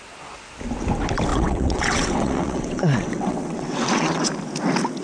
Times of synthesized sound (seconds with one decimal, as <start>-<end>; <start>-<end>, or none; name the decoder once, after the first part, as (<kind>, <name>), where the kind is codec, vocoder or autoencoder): 1.3-4.3 (vocoder, WaveNeXt)